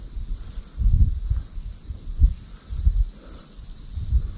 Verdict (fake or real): real